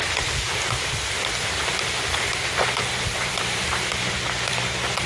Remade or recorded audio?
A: remade